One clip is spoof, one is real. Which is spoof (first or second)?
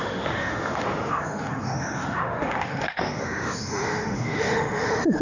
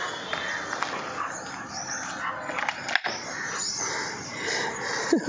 first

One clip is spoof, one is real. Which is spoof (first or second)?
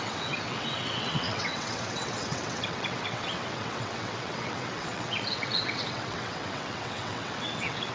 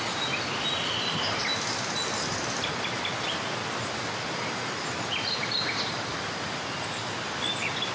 first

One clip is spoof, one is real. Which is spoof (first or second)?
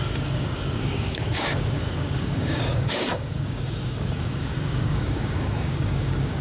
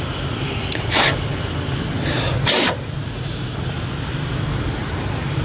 first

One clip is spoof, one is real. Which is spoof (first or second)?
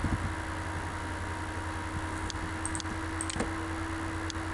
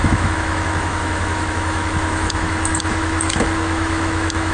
second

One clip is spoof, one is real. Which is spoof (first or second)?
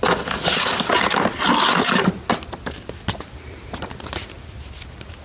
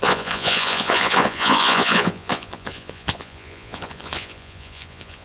second